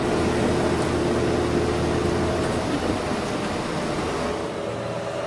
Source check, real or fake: real